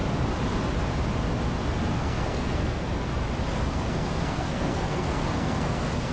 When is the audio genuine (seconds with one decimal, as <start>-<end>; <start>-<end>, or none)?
0.0-1.9; 3.1-3.6